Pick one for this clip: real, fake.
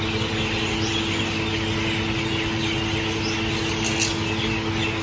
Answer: real